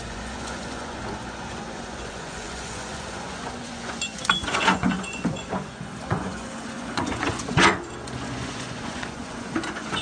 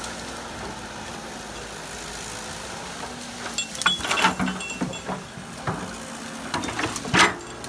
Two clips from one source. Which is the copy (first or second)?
first